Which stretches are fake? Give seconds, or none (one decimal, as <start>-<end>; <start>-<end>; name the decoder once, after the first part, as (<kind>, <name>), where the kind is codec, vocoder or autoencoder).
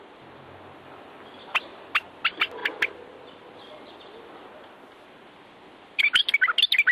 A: none